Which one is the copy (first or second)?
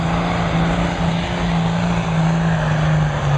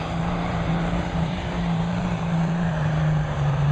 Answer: second